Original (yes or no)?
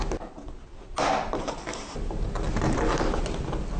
yes